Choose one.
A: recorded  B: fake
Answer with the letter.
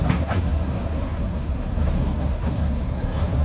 B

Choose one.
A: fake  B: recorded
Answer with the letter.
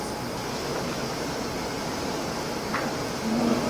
B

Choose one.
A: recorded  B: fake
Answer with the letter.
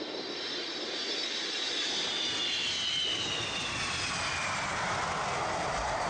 A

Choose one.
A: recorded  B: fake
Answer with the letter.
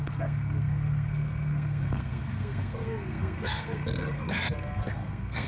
B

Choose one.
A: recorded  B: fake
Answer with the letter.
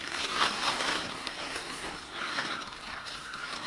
B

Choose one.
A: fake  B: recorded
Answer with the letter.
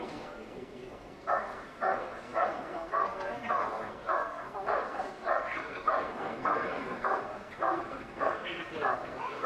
A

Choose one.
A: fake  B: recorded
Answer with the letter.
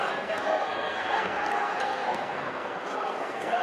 A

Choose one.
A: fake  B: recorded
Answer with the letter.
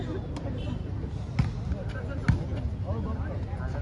B